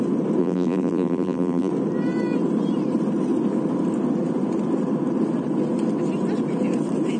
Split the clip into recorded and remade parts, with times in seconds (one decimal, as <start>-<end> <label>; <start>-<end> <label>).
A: 0.0-0.4 recorded; 0.4-1.7 remade; 1.7-7.2 recorded